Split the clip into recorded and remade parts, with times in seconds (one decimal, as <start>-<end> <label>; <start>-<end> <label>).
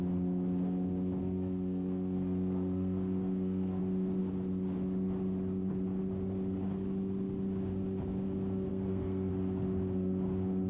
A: 0.0-1.2 recorded; 1.2-3.8 remade; 3.8-8.7 recorded; 8.7-9.3 remade; 9.3-10.7 recorded